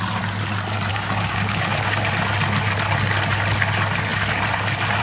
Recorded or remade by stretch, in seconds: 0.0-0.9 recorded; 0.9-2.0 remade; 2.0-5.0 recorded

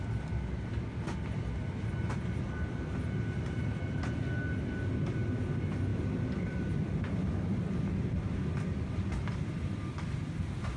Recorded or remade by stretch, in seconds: 0.0-5.9 recorded; 5.9-9.9 remade; 9.9-10.8 recorded

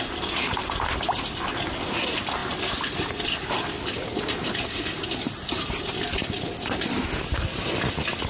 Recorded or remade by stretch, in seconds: 0.0-8.3 recorded